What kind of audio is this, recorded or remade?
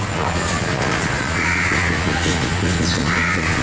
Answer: remade